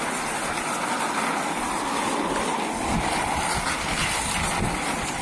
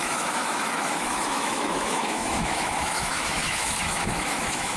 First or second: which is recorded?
first